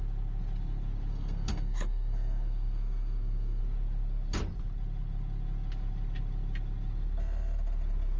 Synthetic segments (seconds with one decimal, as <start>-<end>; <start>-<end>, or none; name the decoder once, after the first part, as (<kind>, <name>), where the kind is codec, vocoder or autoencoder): 1.1-3.6 (codec, SNAC)